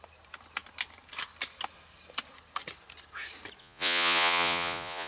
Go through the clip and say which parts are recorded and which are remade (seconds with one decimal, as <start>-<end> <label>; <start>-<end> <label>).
0.0-3.6 recorded; 3.6-5.1 remade